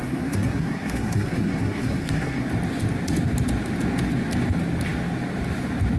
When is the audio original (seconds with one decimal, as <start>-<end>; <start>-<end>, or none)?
2.5-6.0

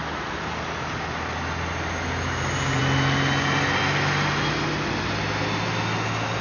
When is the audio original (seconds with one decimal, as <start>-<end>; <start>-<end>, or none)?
0.0-6.4

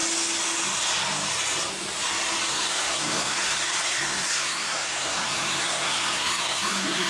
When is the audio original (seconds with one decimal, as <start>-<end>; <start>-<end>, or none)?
0.0-2.5

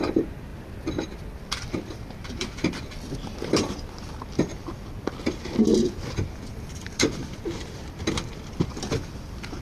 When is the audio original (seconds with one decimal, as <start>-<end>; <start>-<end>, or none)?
none

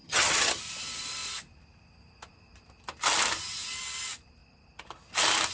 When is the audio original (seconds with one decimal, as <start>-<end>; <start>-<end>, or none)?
0.6-5.5

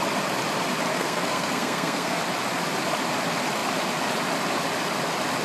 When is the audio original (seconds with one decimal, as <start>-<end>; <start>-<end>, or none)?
0.0-0.9; 2.2-5.4

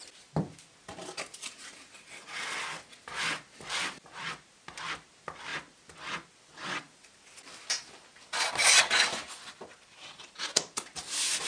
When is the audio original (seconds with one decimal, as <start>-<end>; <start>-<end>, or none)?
0.0-11.5

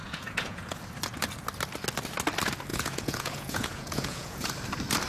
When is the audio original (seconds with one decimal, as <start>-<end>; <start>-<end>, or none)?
0.8-2.7; 4.5-5.1